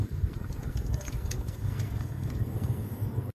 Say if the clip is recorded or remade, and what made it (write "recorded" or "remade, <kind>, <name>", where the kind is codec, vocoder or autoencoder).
remade, codec, SNAC